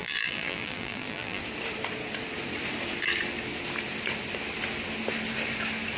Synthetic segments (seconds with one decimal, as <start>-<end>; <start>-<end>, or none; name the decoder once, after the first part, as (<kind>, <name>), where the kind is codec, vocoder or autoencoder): 0.0-1.4 (vocoder, BigVGAN v2)